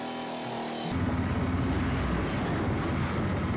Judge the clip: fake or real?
real